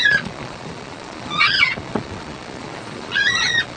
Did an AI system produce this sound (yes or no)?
yes